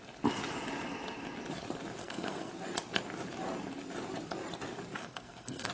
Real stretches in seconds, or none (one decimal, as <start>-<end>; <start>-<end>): 0.0-2.0; 2.5-5.0